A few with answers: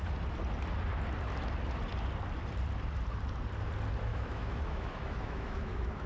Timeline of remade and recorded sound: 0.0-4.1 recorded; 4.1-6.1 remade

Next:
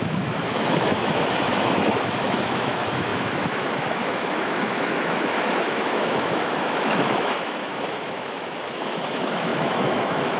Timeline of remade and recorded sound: 0.0-10.4 remade